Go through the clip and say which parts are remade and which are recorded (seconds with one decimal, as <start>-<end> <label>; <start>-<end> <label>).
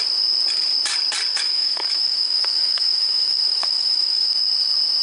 0.0-1.3 recorded; 1.3-4.3 remade; 4.3-5.0 recorded